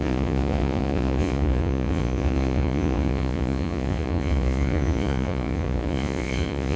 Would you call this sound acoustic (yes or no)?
no